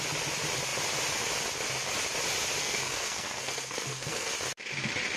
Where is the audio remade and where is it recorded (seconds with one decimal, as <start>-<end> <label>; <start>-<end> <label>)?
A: 0.0-2.6 recorded; 2.6-4.3 remade; 4.3-5.2 recorded